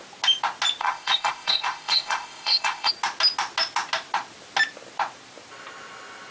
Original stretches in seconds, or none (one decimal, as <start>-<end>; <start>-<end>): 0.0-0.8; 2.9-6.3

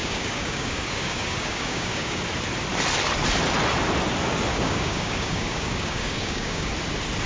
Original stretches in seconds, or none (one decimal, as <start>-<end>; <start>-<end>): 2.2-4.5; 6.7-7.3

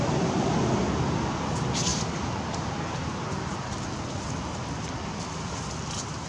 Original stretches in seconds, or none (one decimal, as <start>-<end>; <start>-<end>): 0.0-6.3

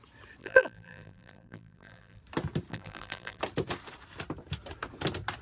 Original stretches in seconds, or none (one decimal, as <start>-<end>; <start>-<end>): 0.0-0.4; 2.2-2.7; 3.4-5.4